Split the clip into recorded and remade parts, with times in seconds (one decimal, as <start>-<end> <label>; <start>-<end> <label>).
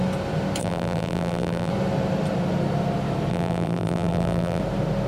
0.0-0.6 recorded; 0.6-1.7 remade; 1.7-3.3 recorded; 3.3-4.6 remade; 4.6-5.1 recorded